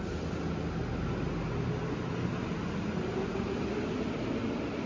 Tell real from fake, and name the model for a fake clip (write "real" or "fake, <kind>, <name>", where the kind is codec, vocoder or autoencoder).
real